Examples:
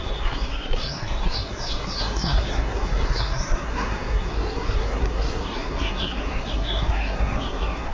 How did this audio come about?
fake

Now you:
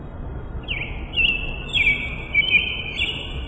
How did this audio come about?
real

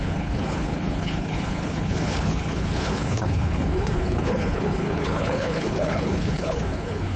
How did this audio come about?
fake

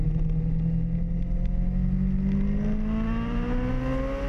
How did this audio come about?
real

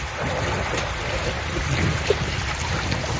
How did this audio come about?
real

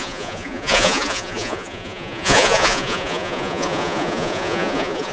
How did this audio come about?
fake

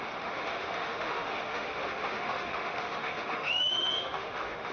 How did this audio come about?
fake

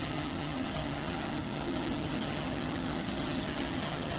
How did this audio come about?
fake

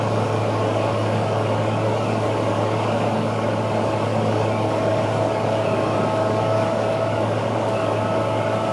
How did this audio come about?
fake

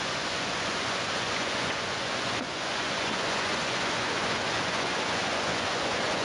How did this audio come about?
fake